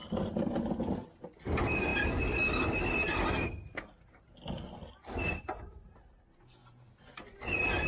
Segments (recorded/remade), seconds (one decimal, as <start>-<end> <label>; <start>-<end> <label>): 0.0-7.9 recorded